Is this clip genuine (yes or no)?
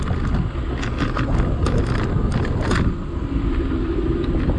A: yes